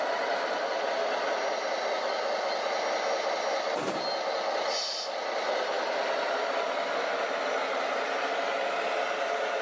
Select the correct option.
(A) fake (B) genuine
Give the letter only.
B